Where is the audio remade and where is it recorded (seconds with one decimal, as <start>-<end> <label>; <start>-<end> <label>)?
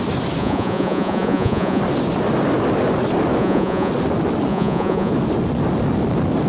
0.0-0.4 recorded; 0.4-1.8 remade; 1.8-3.4 recorded; 3.4-3.9 remade; 3.9-4.5 recorded; 4.5-5.1 remade; 5.1-6.5 recorded